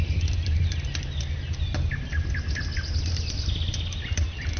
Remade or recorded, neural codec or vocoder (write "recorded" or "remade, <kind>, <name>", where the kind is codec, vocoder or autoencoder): recorded